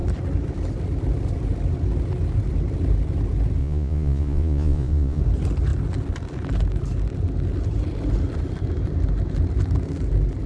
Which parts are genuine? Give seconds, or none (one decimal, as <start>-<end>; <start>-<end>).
0.0-3.6; 5.2-10.5